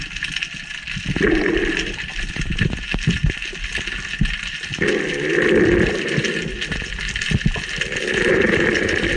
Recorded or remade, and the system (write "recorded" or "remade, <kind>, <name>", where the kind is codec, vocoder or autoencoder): recorded